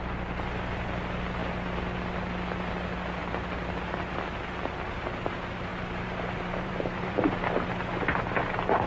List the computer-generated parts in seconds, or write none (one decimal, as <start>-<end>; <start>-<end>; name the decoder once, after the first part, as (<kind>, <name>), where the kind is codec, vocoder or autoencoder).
5.7-7.4 (vocoder, BigVGAN v2)